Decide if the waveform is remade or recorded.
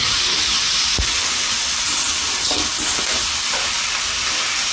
recorded